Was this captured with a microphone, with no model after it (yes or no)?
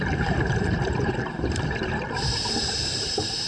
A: no